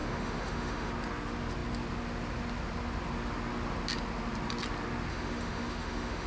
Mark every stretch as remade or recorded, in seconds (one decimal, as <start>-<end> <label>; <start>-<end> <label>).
0.0-0.9 remade; 0.9-5.1 recorded; 5.1-6.3 remade